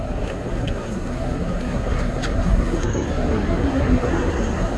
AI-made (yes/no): yes